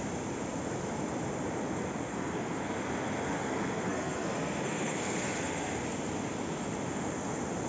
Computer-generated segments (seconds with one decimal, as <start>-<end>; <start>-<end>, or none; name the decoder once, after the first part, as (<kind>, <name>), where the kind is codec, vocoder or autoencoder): 2.1-2.6 (codec, SNAC); 3.4-5.8